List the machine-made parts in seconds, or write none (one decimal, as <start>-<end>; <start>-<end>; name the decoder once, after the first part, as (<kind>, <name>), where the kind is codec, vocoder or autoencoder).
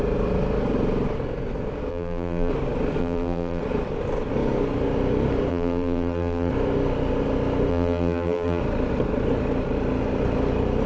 1.9-2.5 (vocoder, BigVGAN v2); 3.0-3.6; 5.5-6.5; 7.7-8.6